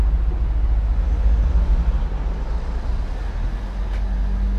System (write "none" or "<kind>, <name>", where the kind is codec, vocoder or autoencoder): none